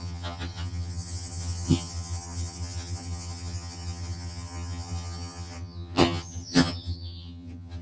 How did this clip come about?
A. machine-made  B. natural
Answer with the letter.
A